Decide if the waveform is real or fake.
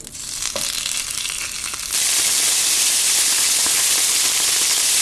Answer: real